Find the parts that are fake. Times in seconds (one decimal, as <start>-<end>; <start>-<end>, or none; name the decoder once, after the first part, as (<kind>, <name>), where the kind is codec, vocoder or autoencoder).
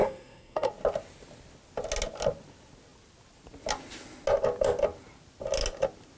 0.0-0.7 (codec, SNAC)